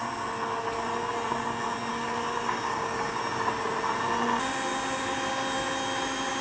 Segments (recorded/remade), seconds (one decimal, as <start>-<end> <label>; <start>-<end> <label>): 0.0-1.9 recorded; 1.9-3.2 remade; 3.2-6.4 recorded

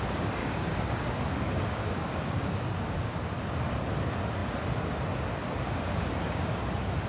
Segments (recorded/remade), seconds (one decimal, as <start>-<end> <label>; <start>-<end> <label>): 0.0-0.4 recorded; 0.4-3.1 remade; 3.1-7.1 recorded

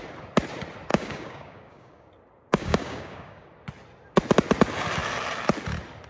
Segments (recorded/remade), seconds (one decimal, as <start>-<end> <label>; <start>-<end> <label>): 0.0-0.9 recorded; 0.9-2.1 remade; 2.1-2.5 recorded; 2.5-3.5 remade; 3.5-6.1 recorded

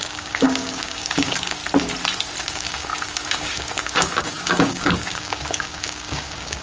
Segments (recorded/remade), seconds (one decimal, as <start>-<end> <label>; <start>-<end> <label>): 0.0-1.6 remade; 1.6-2.4 recorded; 2.4-6.6 remade